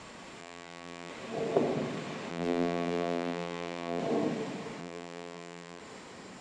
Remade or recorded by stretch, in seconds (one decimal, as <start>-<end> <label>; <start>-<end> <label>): 0.0-0.4 recorded; 0.4-1.1 remade; 1.1-2.3 recorded; 2.3-4.0 remade; 4.0-4.8 recorded; 4.8-5.8 remade; 5.8-6.4 recorded